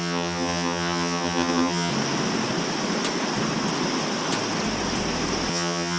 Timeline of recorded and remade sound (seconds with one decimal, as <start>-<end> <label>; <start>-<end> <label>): 0.0-1.9 remade; 1.9-5.5 recorded; 5.5-6.0 remade